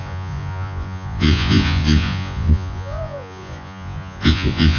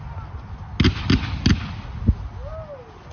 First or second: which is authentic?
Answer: second